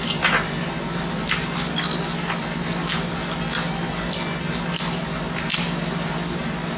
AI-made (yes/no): no